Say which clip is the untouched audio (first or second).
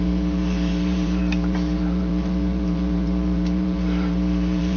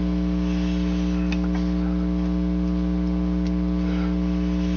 second